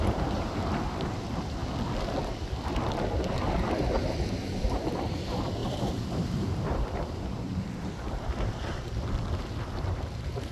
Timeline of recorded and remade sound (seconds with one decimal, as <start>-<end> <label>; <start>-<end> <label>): 0.0-1.6 remade; 1.6-4.2 recorded; 4.2-10.5 remade

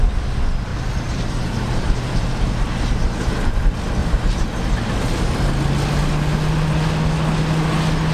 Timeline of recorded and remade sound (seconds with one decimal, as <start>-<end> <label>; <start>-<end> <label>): 0.0-0.7 recorded; 0.7-3.6 remade; 3.6-4.0 recorded; 4.0-5.3 remade; 5.3-8.1 recorded

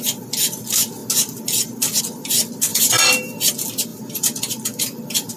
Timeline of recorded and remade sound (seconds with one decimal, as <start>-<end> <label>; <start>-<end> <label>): 0.0-2.7 recorded; 2.7-3.5 remade; 3.5-3.9 recorded; 3.9-4.8 remade; 4.8-5.4 recorded

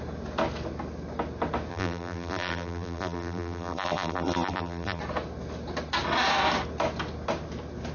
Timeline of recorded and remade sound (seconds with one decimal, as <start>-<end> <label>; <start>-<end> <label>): 0.0-1.7 recorded; 1.7-5.0 remade; 5.0-7.9 recorded

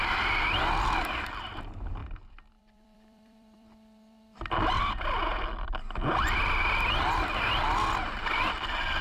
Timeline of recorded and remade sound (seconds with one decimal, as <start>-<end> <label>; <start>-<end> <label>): 0.0-2.0 recorded; 2.0-4.8 remade; 4.8-9.0 recorded

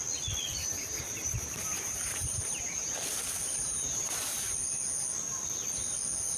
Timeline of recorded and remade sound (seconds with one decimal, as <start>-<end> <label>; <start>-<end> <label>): 0.0-0.5 recorded; 0.5-3.1 remade; 3.1-3.6 recorded; 3.6-4.2 remade; 4.2-6.4 recorded

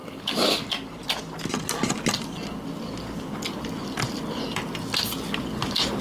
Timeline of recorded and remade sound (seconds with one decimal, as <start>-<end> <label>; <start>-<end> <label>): 0.0-6.0 recorded

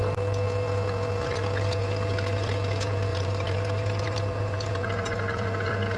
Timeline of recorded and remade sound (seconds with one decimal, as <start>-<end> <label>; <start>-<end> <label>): 0.0-3.1 recorded; 3.1-4.7 remade; 4.7-6.0 recorded